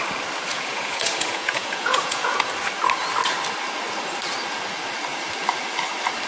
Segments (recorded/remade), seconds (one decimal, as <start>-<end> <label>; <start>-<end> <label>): 0.0-0.5 recorded; 0.5-2.5 remade; 2.5-6.3 recorded